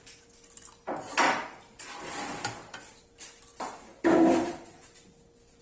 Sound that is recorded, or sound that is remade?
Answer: recorded